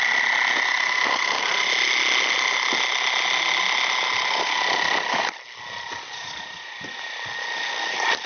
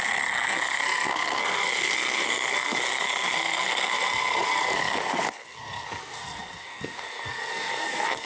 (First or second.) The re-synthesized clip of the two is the second